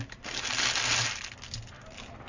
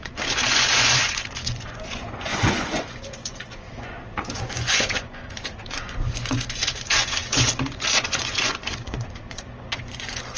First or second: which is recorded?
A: first